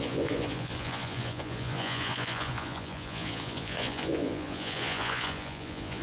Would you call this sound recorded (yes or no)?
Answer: no